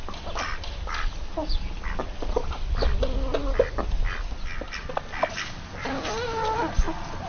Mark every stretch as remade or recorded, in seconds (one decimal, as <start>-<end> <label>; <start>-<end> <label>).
0.0-7.3 recorded